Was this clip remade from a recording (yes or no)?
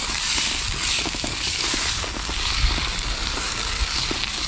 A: yes